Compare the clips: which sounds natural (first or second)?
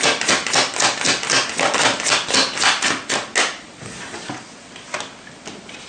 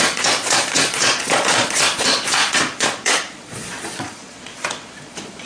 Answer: first